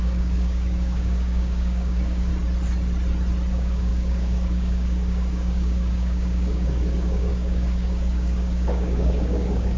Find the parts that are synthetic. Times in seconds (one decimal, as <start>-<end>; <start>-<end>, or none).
0.0-2.3; 3.5-9.8